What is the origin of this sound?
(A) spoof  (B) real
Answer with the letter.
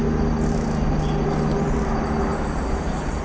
B